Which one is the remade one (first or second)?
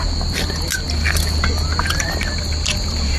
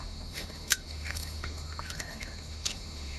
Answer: second